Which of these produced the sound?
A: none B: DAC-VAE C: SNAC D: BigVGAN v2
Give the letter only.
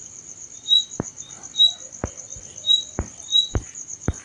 A